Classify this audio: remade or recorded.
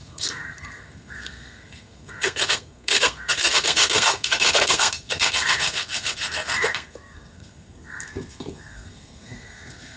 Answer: remade